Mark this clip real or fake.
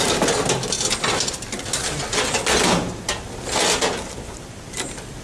real